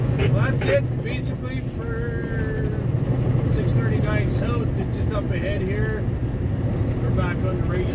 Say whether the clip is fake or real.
real